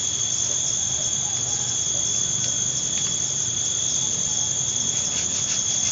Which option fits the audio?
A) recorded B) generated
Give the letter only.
A